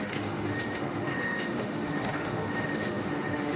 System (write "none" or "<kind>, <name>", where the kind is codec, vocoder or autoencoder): autoencoder, DAC-VAE